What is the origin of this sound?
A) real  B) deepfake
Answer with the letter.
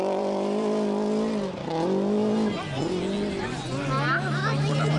A